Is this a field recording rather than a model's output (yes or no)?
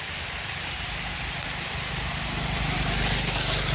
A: yes